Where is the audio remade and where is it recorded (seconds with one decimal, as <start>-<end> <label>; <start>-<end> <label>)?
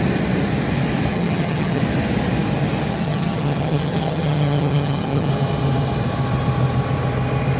0.0-1.1 recorded; 1.1-1.8 remade; 1.8-2.9 recorded; 2.9-5.3 remade; 5.3-7.6 recorded